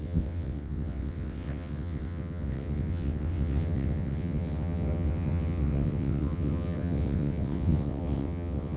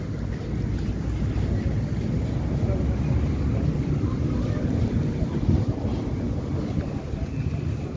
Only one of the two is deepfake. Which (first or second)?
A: first